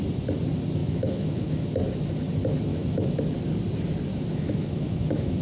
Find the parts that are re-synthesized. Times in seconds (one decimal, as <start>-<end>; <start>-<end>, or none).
0.8-1.6; 2.7-3.2; 4.1-5.4